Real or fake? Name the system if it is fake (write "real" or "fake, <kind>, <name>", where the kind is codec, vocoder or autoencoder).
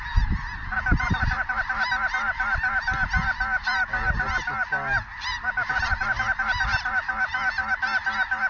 real